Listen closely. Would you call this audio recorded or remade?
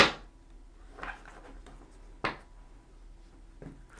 recorded